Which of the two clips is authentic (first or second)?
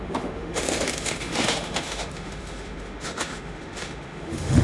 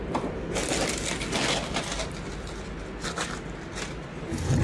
second